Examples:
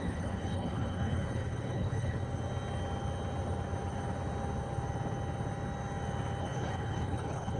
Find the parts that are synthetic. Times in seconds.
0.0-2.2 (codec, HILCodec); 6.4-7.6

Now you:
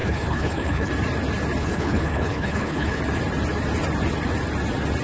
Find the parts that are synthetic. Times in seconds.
0.0-0.9 (codec, HILCodec); 1.6-3.0

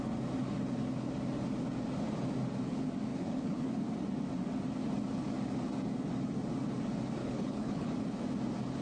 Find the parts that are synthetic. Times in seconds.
3.1-3.7 (codec, HILCodec); 7.2-7.9

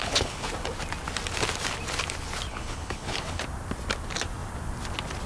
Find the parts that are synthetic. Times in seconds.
0.0-0.5 (codec, HILCodec); 2.5-3.4

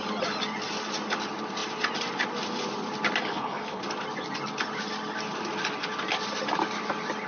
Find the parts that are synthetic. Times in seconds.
3.3-3.8 (codec, HILCodec)